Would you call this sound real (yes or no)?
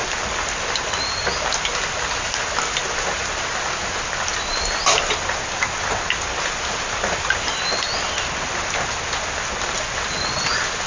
yes